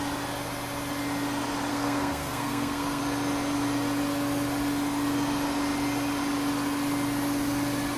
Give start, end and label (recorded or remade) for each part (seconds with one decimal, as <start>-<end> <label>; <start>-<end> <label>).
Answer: 0.0-1.7 recorded; 1.7-3.0 remade; 3.0-8.0 recorded